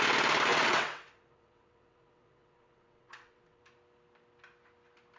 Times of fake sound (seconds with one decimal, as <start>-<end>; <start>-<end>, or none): 0.5-3.6